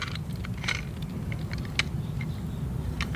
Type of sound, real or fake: real